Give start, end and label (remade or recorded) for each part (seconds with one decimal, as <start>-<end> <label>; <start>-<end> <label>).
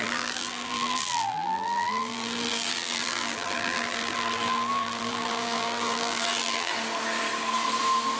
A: 0.0-6.7 remade; 6.7-8.2 recorded